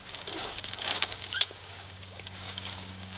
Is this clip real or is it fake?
fake